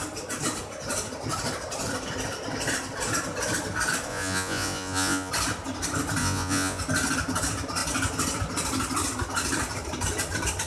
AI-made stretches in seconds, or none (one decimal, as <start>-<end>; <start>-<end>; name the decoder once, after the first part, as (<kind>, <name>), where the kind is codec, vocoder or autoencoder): 4.1-5.3 (vocoder, Vocos); 6.2-6.8